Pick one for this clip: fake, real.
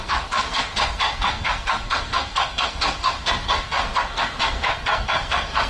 fake